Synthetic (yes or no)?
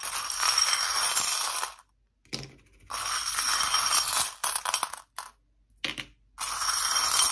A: no